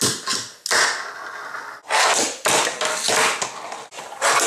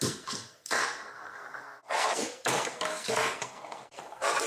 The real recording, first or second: first